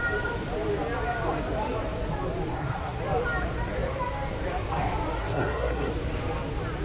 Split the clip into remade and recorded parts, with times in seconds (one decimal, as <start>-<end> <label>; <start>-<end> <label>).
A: 0.0-2.5 recorded; 2.5-3.0 remade; 3.0-5.2 recorded; 5.2-5.9 remade; 5.9-6.8 recorded